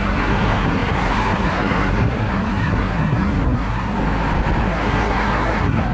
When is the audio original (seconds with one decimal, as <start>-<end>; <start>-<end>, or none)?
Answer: 4.0-4.6